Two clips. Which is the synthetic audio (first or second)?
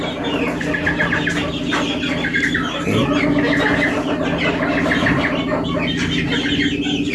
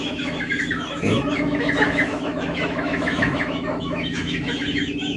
second